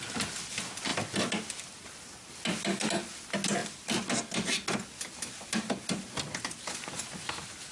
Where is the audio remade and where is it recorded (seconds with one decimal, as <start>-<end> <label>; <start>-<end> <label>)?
0.0-7.7 recorded